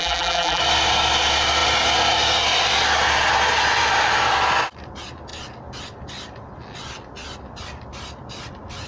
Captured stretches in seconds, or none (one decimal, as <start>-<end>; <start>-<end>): 0.6-8.9